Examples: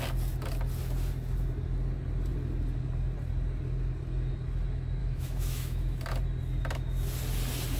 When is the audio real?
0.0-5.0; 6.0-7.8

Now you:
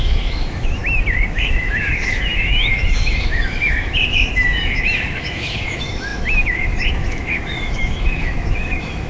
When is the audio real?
0.8-1.3

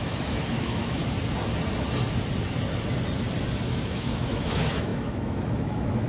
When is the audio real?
1.0-3.6

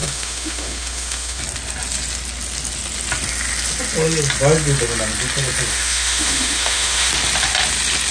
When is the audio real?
1.4-5.7; 7.1-8.1